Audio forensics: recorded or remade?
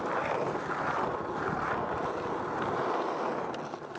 recorded